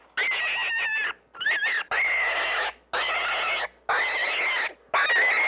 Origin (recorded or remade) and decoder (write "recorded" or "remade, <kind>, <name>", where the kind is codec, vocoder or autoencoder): recorded